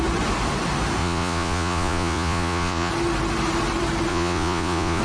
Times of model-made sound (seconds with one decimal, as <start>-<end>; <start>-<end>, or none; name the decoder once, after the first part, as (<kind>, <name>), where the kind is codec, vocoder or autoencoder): 1.0-2.9 (vocoder, Vocos); 4.1-5.0